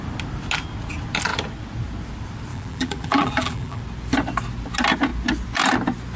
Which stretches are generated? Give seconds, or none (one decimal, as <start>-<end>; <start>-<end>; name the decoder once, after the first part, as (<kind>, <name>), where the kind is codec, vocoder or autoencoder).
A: 2.5-3.8 (vocoder, BigVGAN v2)